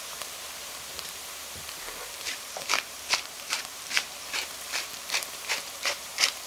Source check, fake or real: fake